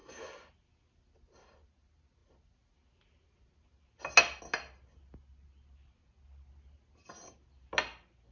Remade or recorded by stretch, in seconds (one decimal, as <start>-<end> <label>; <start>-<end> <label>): 0.0-8.3 recorded